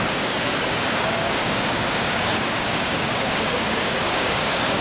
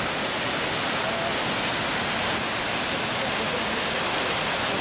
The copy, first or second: first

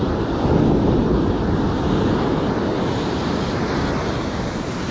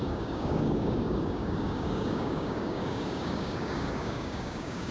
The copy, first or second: second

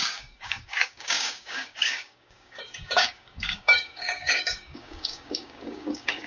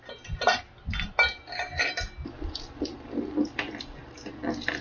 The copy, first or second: first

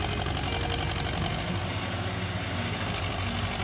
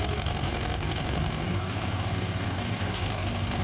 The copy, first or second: second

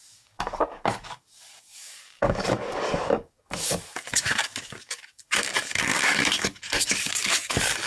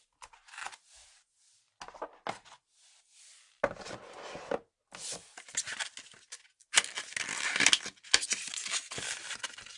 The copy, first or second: first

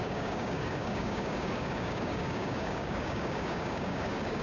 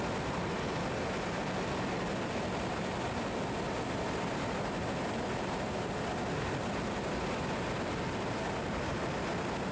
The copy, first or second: first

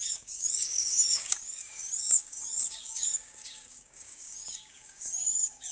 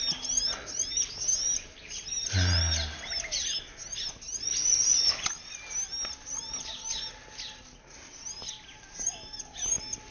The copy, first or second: first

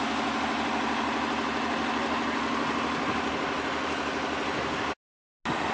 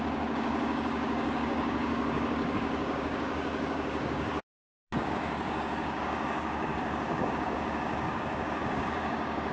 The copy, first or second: second